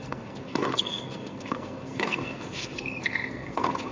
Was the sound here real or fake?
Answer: fake